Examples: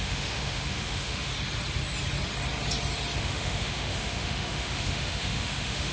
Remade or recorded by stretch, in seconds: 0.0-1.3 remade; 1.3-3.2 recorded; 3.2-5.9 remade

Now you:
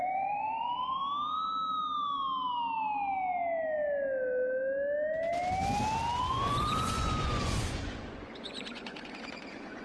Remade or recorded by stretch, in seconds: 0.0-1.0 remade; 1.0-6.2 recorded; 6.2-9.8 remade

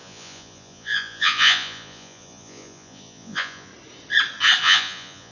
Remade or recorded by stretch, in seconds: 0.0-3.7 remade; 3.7-4.6 recorded; 4.6-5.3 remade

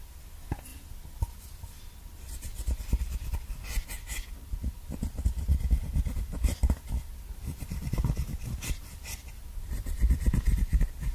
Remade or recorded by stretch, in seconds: 0.0-0.7 remade; 0.7-4.7 recorded; 4.7-11.1 remade

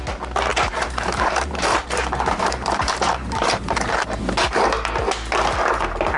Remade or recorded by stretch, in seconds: 0.0-0.5 recorded; 0.5-4.2 remade; 4.2-6.2 recorded

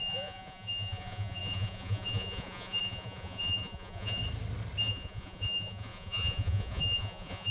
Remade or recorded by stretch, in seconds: 0.0-4.2 remade; 4.2-4.8 recorded; 4.8-7.5 remade